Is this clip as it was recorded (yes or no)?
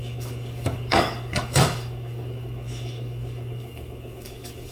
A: no